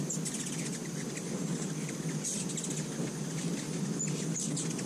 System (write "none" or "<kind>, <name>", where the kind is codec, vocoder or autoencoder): none